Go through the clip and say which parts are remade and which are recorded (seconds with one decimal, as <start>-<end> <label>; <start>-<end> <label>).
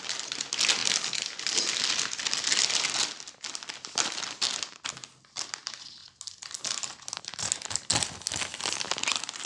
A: 0.0-9.5 recorded